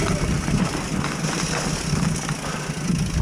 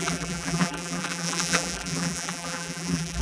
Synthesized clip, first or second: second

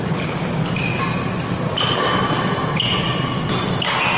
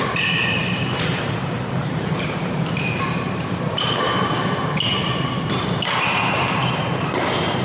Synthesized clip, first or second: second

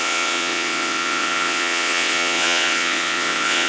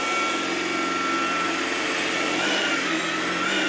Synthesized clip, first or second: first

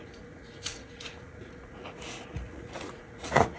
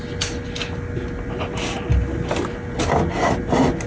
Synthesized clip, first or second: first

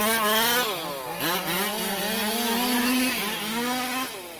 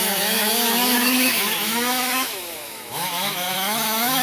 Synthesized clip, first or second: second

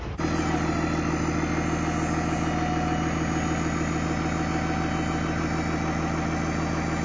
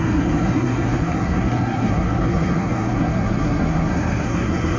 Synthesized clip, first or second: second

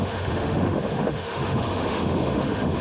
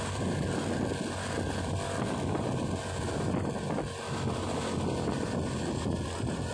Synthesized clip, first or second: first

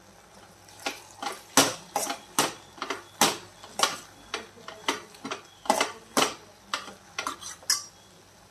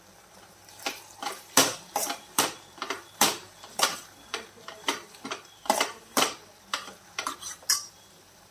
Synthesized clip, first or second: second